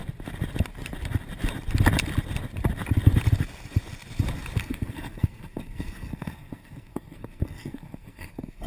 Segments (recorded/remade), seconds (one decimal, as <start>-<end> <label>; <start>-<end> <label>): 0.0-4.6 recorded; 4.6-8.7 remade